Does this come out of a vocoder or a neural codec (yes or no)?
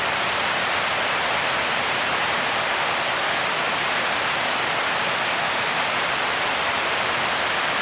no